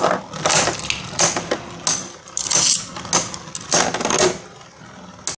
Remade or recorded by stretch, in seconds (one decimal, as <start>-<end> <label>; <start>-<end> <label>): 0.0-5.4 recorded